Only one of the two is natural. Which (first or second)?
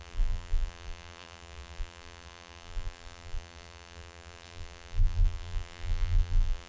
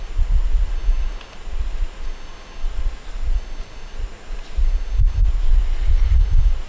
second